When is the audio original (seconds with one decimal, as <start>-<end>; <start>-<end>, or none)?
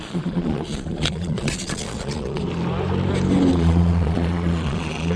2.4-3.5